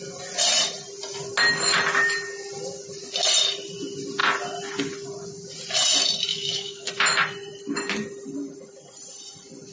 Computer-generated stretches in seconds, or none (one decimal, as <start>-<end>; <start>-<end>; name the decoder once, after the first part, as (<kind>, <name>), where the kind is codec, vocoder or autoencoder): 6.3-6.9 (codec, DAC)